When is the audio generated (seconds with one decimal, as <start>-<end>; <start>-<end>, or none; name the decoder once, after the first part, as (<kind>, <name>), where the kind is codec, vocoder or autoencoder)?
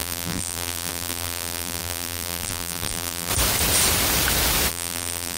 0.0-3.3 (vocoder, BigVGAN v2); 4.7-5.4